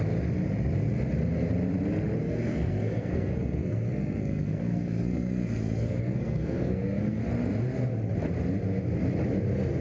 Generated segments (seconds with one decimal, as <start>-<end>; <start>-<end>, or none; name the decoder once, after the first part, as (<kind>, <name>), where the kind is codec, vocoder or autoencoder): 2.2-7.2 (codec, SNAC)